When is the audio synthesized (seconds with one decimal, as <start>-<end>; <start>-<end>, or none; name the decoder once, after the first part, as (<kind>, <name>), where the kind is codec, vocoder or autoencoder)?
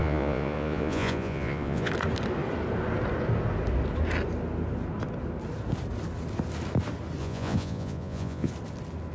0.0-1.9 (vocoder, Vocos); 7.2-8.5